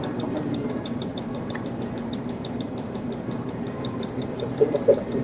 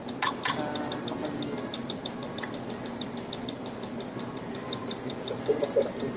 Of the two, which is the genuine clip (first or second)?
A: second